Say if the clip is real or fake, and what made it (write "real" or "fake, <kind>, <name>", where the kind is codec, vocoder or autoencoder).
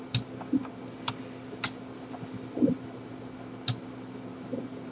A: real